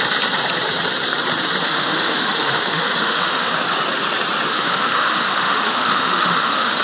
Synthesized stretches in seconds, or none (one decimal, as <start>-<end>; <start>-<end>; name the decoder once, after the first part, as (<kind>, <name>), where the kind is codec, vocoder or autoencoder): 1.6-3.5 (autoencoder, DAC-VAE); 4.5-6.8